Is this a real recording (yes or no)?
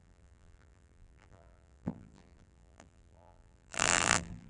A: no